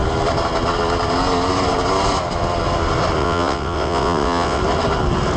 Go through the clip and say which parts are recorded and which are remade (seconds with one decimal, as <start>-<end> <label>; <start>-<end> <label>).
0.0-3.2 recorded; 3.2-4.6 remade; 4.6-5.4 recorded